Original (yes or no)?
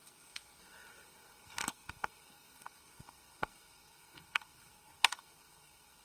no